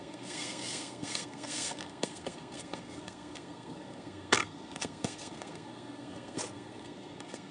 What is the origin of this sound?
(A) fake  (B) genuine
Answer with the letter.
A